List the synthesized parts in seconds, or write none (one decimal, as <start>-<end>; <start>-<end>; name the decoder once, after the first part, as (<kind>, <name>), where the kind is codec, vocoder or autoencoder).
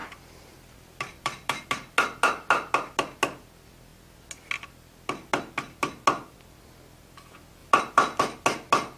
0.0-1.7 (vocoder, BigVGAN v2); 7.6-8.2